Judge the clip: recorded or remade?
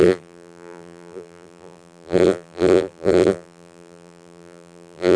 remade